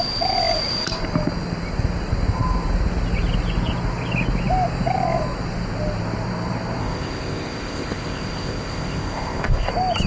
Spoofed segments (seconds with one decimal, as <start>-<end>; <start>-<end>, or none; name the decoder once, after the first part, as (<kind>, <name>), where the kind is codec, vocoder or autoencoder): 6.8-9.7 (codec, ZipCodec)